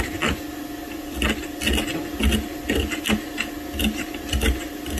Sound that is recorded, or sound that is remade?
recorded